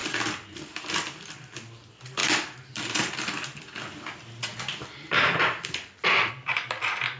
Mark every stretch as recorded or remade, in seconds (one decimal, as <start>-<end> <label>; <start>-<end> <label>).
0.0-7.2 recorded